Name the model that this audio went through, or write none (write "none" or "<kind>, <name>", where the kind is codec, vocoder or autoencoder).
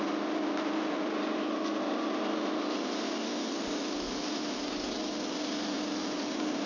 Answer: none